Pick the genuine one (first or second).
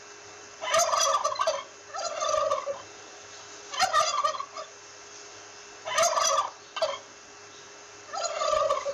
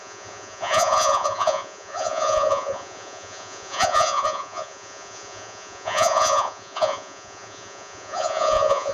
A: first